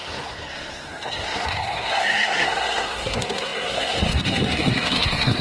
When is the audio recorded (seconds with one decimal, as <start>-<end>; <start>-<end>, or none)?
none